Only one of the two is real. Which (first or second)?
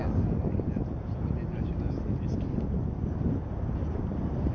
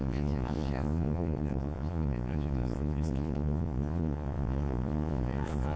first